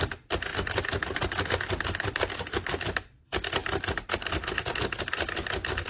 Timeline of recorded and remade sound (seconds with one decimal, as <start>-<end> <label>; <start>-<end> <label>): 0.0-5.9 recorded